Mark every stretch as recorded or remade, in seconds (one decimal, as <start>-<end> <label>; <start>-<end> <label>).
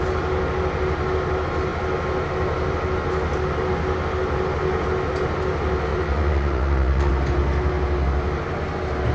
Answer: 0.0-5.9 recorded; 5.9-7.1 remade; 7.1-9.1 recorded